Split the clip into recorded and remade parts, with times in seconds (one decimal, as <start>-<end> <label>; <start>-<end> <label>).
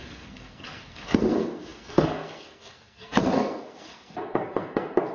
0.0-5.1 remade